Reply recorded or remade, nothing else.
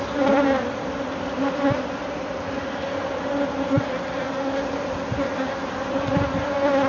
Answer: recorded